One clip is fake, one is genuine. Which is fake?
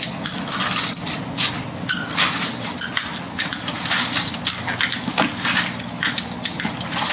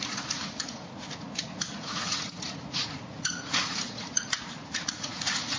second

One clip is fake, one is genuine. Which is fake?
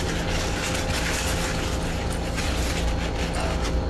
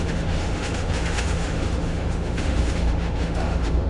second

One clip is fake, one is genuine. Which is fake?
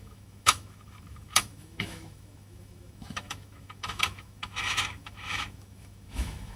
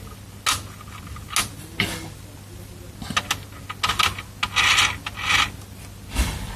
first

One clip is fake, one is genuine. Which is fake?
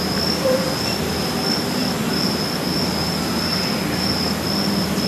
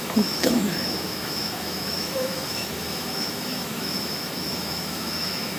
second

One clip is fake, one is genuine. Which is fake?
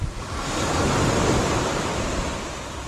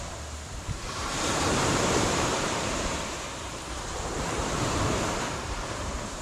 second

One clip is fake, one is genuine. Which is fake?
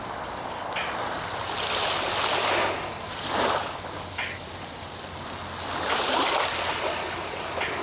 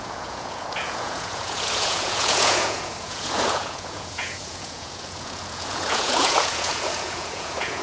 second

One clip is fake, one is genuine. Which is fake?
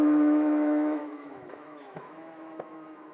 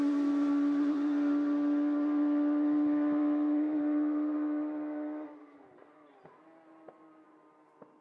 first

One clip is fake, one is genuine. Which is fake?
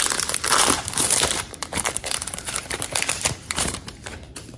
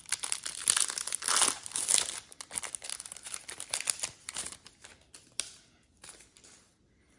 first